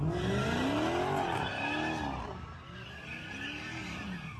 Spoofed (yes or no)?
no